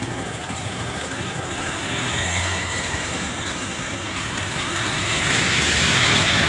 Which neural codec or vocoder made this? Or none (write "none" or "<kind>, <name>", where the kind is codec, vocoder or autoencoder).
codec, SNAC